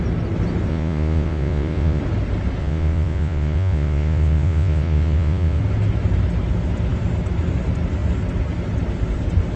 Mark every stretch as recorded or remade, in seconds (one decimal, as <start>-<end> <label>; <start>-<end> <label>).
0.0-0.7 recorded; 0.7-2.0 remade; 2.0-2.6 recorded; 2.6-5.6 remade; 5.6-9.6 recorded